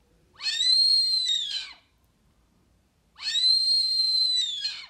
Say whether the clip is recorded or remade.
remade